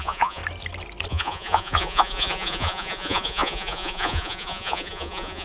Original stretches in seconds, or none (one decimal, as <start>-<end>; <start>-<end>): 0.4-1.1